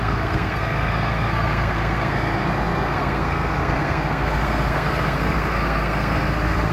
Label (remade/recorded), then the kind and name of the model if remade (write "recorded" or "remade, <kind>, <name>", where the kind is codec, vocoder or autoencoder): remade, codec, SNAC